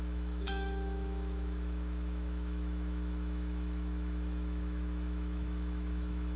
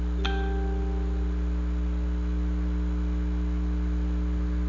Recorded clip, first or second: second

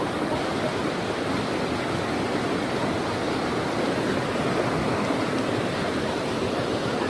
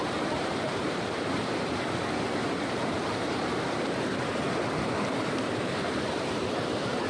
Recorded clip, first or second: first